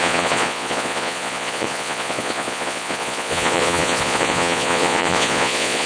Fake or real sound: fake